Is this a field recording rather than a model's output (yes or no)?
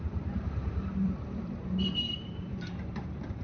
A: no